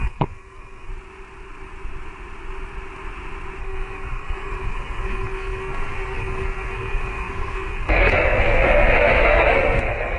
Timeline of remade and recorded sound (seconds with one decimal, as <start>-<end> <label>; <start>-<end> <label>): 0.0-0.9 remade; 0.9-3.6 recorded; 3.6-10.2 remade